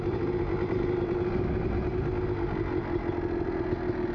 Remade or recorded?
recorded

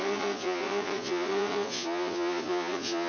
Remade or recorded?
remade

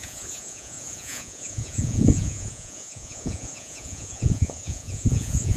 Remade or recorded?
remade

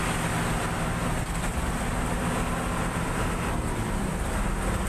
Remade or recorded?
recorded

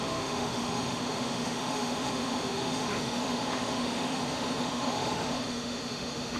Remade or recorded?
remade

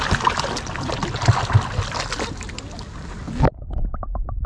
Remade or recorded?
recorded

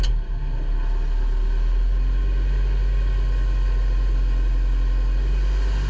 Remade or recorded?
recorded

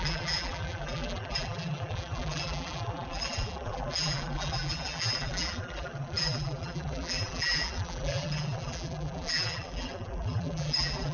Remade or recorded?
remade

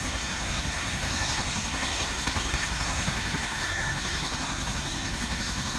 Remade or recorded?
remade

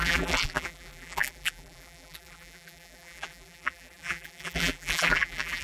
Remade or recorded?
remade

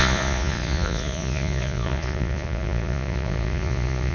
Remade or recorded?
remade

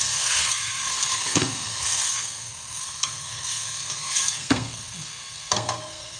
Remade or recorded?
remade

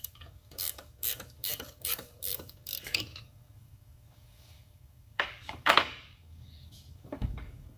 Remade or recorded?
remade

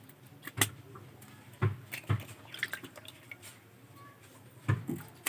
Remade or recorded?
recorded